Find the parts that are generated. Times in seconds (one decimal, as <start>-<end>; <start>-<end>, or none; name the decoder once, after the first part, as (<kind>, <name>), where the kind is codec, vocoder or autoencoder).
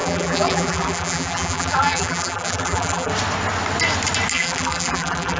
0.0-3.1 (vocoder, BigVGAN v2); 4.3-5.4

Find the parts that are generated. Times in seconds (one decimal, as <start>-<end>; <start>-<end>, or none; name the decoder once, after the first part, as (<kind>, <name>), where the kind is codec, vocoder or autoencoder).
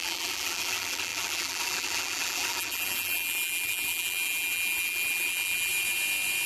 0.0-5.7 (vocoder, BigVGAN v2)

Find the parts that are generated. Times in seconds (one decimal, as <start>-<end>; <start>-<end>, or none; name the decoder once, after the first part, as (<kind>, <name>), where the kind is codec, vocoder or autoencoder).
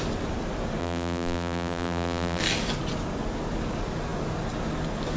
0.8-2.4 (vocoder, BigVGAN v2)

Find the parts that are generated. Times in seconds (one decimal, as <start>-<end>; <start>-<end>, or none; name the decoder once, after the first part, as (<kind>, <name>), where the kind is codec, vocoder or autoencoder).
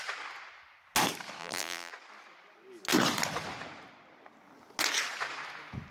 1.4-1.9 (vocoder, BigVGAN v2)